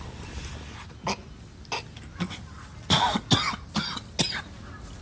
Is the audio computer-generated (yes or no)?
no